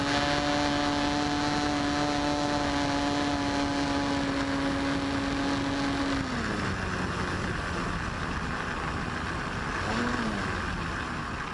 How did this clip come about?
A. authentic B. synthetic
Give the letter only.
A